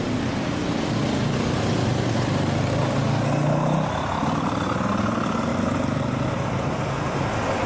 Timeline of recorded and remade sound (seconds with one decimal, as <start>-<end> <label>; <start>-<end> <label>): 0.0-7.7 recorded